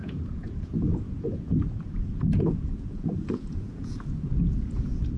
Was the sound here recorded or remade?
remade